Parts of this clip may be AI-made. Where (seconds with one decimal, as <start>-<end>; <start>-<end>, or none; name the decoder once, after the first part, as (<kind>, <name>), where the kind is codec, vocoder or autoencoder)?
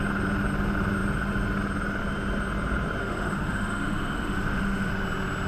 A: 3.0-4.9 (autoencoder, DAC-VAE)